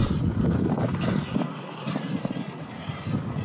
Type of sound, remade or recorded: recorded